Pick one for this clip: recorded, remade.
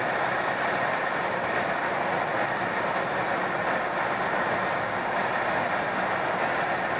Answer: recorded